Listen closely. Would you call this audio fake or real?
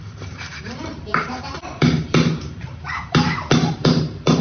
fake